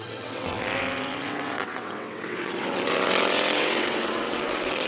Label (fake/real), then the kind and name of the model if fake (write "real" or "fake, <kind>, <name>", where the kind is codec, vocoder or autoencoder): fake, vocoder, WaveNeXt